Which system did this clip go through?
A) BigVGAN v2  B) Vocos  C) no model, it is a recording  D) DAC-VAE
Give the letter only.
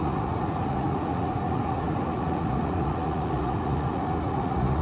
B